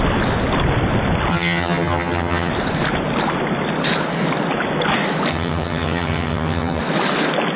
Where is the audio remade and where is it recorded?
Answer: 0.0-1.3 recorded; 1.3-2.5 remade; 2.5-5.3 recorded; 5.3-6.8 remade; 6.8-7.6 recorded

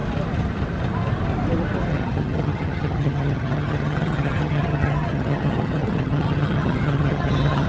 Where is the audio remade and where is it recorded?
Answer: 0.0-1.9 recorded; 1.9-7.7 remade

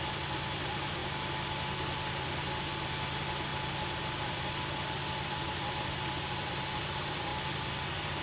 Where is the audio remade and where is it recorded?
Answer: 0.0-8.2 recorded

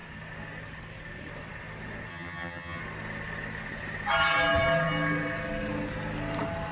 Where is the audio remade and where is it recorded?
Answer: 0.0-2.1 recorded; 2.1-2.8 remade; 2.8-6.7 recorded

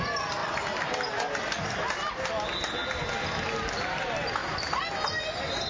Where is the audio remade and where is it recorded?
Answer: 0.0-5.7 recorded

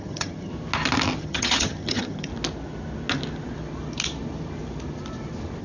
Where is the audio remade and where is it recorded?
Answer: 0.0-0.5 remade; 0.5-1.2 recorded; 1.2-2.3 remade; 2.3-5.6 recorded